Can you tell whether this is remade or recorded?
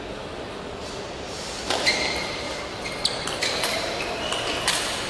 recorded